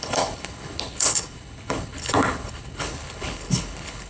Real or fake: fake